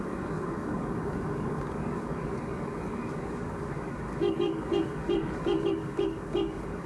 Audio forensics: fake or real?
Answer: fake